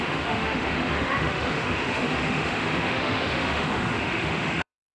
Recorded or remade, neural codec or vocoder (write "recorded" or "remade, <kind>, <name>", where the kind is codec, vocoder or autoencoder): remade, autoencoder, DAC-VAE